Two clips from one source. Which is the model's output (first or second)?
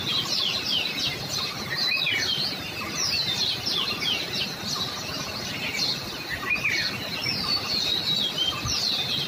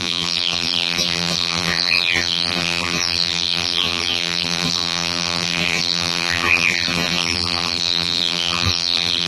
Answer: second